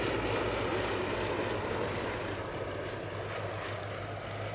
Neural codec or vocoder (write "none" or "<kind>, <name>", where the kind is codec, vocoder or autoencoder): none